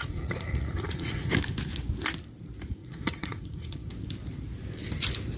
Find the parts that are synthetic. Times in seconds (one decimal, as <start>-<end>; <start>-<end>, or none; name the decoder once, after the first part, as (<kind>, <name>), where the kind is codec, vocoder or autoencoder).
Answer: 0.0-1.3 (vocoder, Vocos); 2.8-3.9